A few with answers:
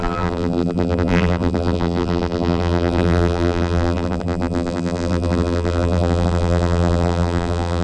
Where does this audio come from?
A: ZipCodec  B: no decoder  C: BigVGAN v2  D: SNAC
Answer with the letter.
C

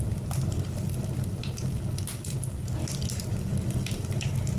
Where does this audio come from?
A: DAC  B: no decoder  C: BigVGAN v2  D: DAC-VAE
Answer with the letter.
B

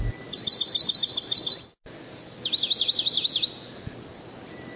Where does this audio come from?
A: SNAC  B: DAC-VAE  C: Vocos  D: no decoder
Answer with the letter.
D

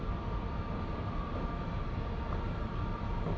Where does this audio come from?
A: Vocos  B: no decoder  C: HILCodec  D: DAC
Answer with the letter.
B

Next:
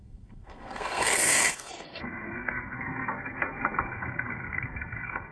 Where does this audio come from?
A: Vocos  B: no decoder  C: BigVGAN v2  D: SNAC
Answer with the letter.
D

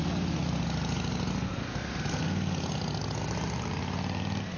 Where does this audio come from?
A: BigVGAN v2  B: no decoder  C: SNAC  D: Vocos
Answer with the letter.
B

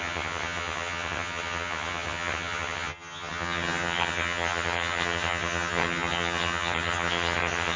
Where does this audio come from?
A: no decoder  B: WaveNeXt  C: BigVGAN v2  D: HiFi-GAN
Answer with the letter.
D